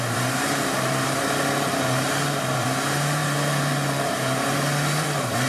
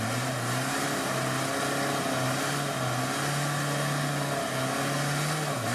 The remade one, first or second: first